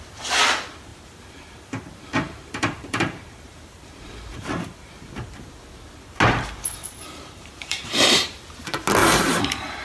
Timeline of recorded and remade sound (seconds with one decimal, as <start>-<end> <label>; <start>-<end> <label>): 0.0-0.9 recorded; 0.9-4.9 remade; 4.9-6.8 recorded; 6.8-8.4 remade; 8.4-9.0 recorded; 9.0-9.8 remade